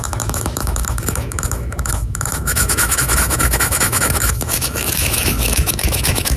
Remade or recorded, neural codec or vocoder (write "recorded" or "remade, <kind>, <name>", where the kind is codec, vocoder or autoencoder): remade, autoencoder, DAC-VAE